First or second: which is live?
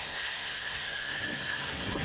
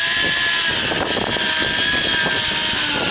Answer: second